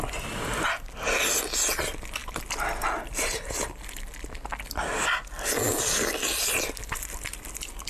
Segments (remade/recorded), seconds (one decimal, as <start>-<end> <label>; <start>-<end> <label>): 0.0-2.2 recorded; 2.2-4.0 remade; 4.0-7.9 recorded